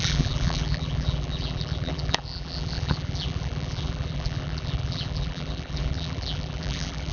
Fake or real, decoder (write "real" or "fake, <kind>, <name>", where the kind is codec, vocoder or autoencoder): fake, vocoder, BigVGAN v2